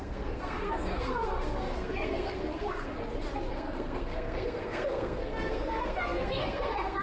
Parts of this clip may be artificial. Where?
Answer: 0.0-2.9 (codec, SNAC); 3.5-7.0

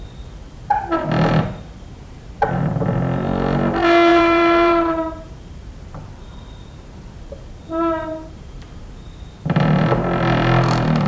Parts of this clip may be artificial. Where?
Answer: 1.9-2.7 (vocoder, BigVGAN v2); 4.1-9.1

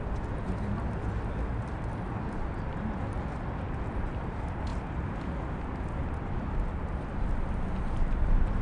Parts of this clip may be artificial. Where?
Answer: none

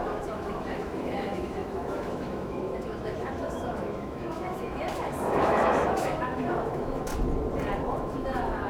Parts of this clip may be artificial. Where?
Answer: 0.0-7.1 (autoencoder, DAC-VAE); 7.8-8.7

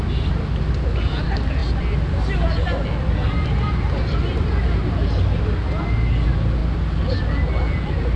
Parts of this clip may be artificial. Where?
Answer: none

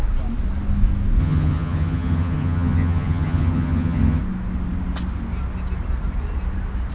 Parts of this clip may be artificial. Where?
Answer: 1.2-4.2 (vocoder, HiFi-GAN)

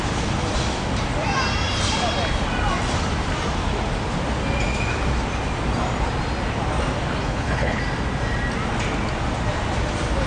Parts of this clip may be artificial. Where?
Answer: 7.2-7.8 (codec, HILCodec)